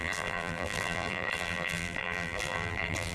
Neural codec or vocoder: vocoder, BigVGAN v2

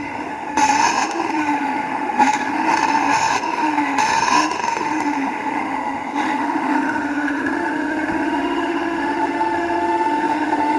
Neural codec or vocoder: autoencoder, DAC-VAE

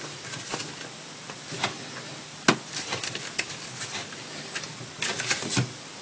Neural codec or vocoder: none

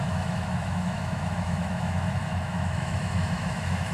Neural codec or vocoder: autoencoder, DAC-VAE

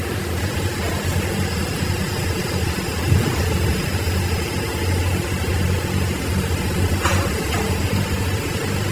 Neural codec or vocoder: none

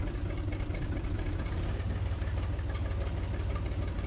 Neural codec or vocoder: none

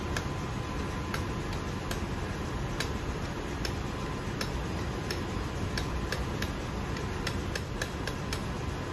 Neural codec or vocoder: none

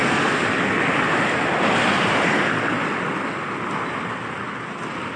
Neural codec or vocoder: none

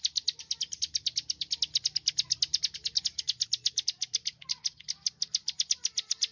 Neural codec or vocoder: none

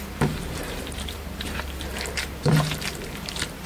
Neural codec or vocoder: vocoder, BigVGAN v2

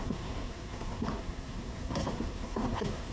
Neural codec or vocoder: codec, SNAC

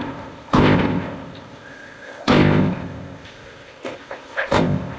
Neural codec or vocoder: codec, ZipCodec